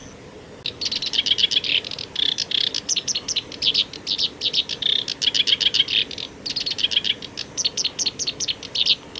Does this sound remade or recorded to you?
recorded